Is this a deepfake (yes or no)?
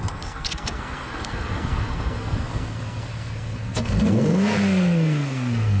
yes